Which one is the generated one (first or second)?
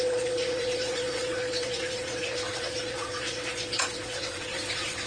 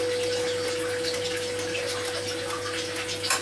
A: first